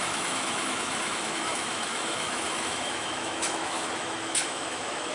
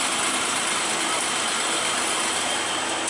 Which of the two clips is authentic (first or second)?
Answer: second